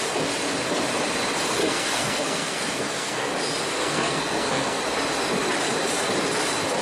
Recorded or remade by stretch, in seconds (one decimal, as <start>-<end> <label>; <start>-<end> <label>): 0.0-1.6 recorded; 1.6-3.3 remade; 3.3-3.8 recorded; 3.8-4.8 remade; 4.8-6.8 recorded